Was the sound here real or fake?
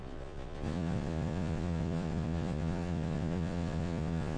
fake